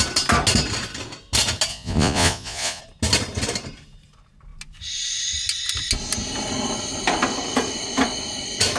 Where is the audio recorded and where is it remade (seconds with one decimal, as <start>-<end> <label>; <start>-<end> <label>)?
0.0-1.7 recorded; 1.7-2.8 remade; 2.8-8.8 recorded